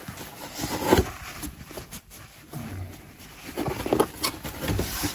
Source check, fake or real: real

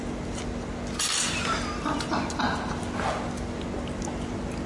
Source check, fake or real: real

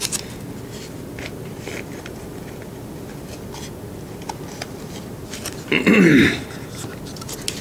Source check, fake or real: real